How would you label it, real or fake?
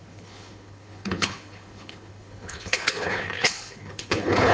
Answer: fake